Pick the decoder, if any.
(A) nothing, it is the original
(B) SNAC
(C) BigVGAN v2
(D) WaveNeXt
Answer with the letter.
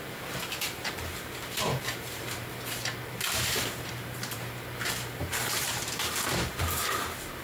C